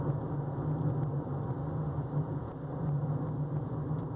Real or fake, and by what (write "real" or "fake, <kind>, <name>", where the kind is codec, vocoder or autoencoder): real